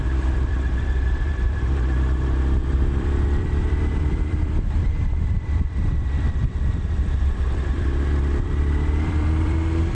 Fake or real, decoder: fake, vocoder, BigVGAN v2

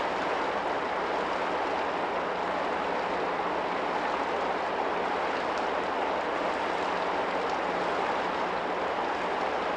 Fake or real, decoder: real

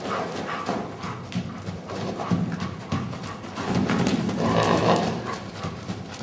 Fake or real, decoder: real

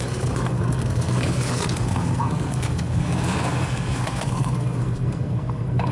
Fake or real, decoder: fake, codec, SNAC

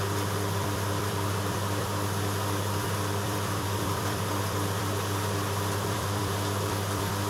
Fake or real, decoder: fake, vocoder, BigVGAN v2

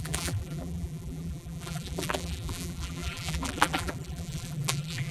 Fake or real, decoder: fake, vocoder, BigVGAN v2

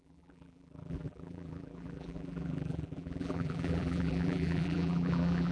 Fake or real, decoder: fake, vocoder, BigVGAN v2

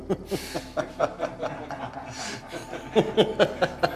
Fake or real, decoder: real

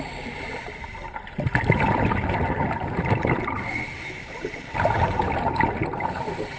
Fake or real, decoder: real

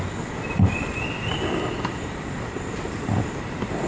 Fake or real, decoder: real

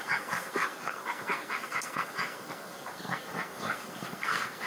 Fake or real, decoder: fake, codec, SNAC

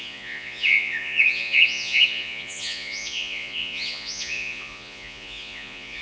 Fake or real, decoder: fake, vocoder, Vocos